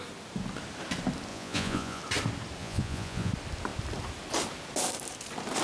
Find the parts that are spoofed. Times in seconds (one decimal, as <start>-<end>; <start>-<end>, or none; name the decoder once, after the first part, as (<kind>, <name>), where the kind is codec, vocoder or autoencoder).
1.3-2.0 (vocoder, Vocos); 2.6-3.3